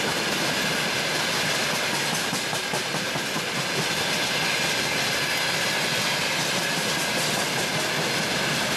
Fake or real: real